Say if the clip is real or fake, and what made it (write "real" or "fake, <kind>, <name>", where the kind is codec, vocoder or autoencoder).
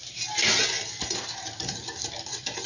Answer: real